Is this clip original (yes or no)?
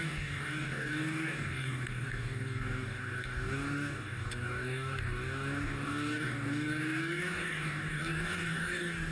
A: no